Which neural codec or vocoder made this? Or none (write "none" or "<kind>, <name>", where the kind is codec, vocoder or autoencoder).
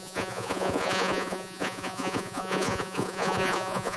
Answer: vocoder, Vocos